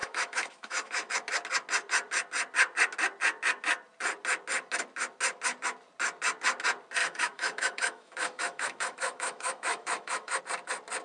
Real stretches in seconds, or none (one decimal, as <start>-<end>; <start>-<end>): 1.1-7.0; 10.4-11.0